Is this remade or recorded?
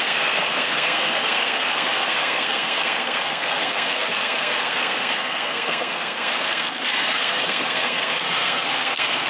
remade